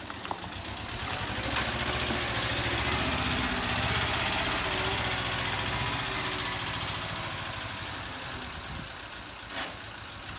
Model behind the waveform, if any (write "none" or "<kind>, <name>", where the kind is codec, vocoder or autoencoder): none